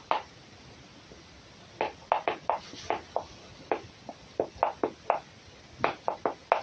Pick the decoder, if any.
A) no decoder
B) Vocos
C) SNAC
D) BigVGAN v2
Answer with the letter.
A